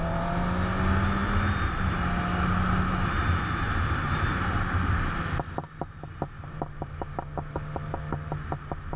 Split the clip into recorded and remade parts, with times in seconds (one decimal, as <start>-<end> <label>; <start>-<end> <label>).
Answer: 0.0-9.0 recorded